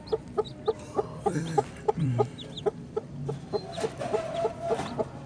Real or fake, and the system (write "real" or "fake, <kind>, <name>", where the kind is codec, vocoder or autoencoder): fake, vocoder, BigVGAN v2